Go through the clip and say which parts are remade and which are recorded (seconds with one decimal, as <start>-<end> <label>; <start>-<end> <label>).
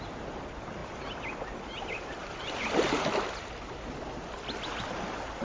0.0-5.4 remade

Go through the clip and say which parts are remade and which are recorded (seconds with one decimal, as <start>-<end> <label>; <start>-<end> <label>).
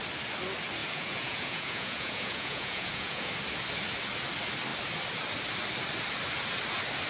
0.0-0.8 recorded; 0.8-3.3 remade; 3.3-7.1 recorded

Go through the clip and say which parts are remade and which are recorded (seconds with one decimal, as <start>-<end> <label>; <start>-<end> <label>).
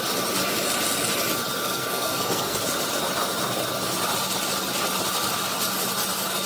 0.0-1.6 recorded; 1.6-2.6 remade; 2.6-6.5 recorded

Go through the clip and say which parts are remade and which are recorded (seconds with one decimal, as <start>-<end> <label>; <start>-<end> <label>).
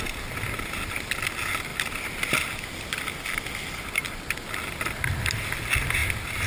0.0-6.5 recorded